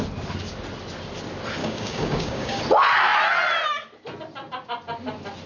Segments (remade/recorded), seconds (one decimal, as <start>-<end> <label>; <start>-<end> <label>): 0.0-1.6 recorded; 1.6-2.6 remade; 2.6-5.5 recorded